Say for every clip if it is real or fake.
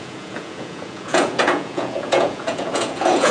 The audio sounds fake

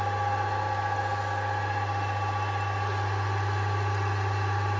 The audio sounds real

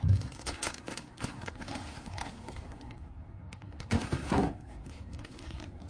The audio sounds fake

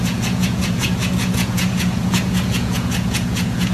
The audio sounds fake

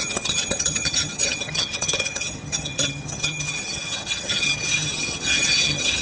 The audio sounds fake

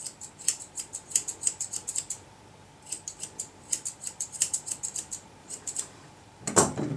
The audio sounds fake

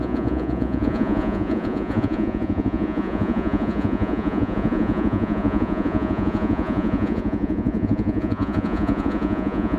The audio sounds fake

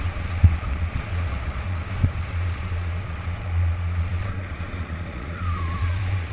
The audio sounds fake